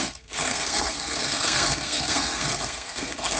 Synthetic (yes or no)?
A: yes